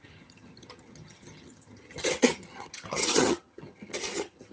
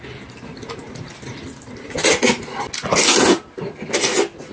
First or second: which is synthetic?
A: first